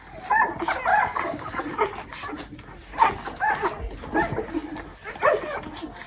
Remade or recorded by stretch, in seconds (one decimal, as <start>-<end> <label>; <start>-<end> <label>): 0.0-0.9 recorded; 0.9-1.6 remade; 1.6-6.1 recorded